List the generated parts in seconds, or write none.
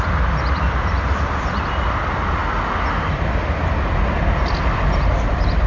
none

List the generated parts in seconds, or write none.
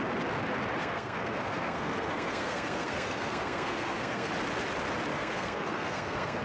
0.8-4.3; 5.1-6.4